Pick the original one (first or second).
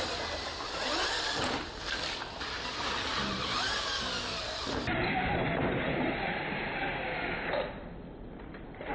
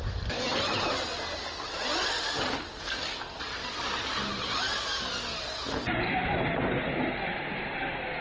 second